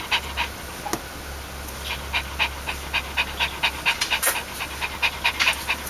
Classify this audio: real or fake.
real